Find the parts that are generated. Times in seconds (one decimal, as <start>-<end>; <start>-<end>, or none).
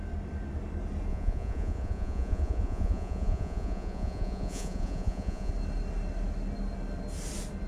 1.1-5.5